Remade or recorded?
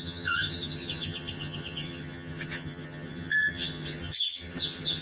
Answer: remade